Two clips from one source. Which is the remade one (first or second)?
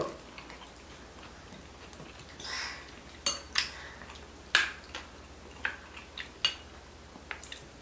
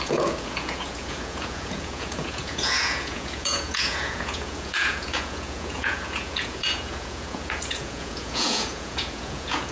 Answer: second